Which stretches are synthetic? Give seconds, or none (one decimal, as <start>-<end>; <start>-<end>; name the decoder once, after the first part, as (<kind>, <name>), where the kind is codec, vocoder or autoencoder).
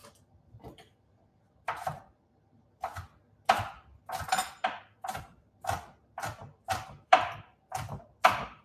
0.0-2.7 (vocoder, BigVGAN v2); 6.4-7.4